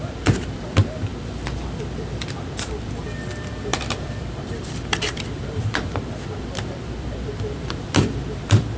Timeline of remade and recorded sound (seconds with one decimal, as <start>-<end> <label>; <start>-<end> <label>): 0.0-1.1 remade; 1.1-2.5 recorded; 2.5-8.8 remade